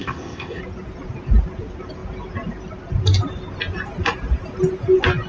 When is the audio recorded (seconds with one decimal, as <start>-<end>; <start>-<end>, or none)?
0.6-5.3